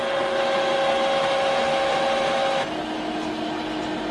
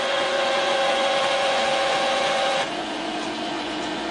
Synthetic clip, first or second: second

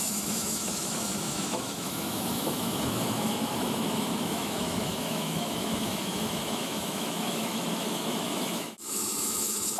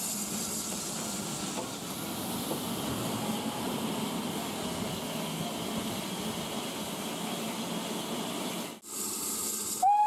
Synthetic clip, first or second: first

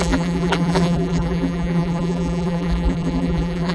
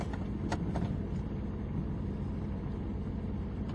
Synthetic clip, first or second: first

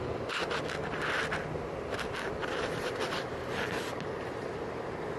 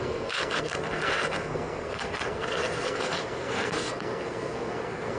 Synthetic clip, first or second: second